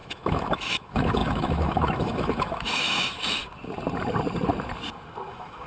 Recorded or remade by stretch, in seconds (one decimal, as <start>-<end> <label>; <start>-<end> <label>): 0.0-3.4 remade; 3.4-5.3 recorded; 5.3-5.7 remade